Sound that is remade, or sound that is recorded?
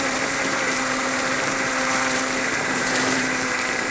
remade